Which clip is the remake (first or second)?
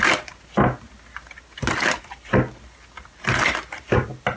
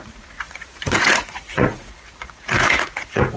second